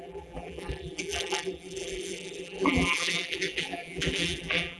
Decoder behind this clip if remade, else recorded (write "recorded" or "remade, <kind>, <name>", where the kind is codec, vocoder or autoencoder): remade, vocoder, BigVGAN v2